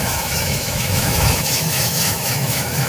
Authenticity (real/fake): fake